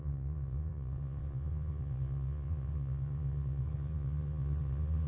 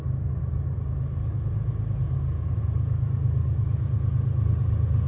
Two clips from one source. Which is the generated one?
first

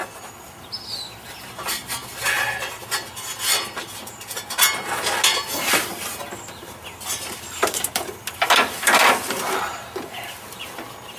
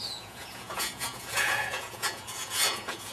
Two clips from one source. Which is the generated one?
second